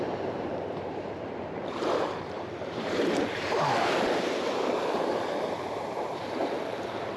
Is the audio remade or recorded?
remade